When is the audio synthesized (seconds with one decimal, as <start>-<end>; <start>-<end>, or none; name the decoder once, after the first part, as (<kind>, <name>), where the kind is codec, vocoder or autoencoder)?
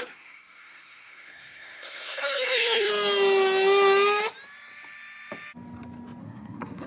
0.0-2.9 (codec, SNAC); 6.2-6.9